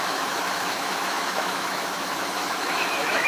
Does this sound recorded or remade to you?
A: remade